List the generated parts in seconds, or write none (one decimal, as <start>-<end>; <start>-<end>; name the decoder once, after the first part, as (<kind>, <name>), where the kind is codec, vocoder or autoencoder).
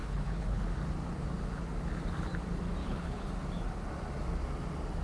0.0-0.7 (codec, HILCodec); 2.8-3.3